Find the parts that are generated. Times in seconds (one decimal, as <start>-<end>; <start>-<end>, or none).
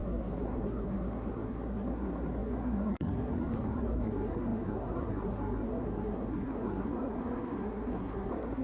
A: 0.0-8.6